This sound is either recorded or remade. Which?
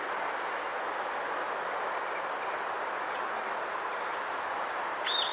recorded